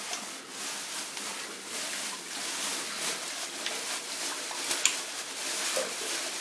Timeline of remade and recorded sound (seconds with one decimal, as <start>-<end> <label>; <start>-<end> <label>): 0.0-6.4 recorded